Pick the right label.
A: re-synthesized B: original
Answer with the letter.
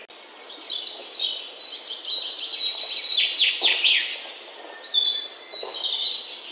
B